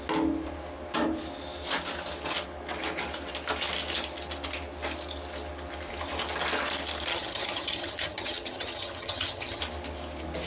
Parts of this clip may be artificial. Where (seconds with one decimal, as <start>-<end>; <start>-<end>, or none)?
7.1-9.6